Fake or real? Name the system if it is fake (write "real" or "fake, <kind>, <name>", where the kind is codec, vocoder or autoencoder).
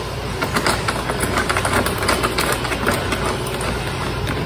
real